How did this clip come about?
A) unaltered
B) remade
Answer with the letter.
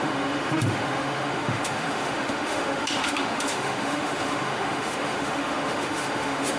B